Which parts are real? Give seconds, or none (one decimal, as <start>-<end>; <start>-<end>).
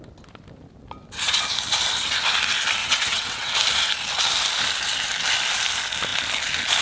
0.0-2.8; 3.5-6.8